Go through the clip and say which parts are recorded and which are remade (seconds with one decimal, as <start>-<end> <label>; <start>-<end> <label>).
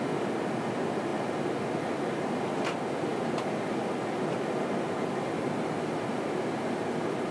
0.0-7.3 recorded